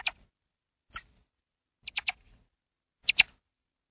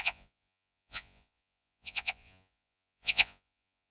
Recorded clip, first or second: first